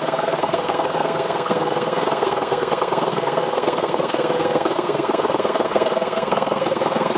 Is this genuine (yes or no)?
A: no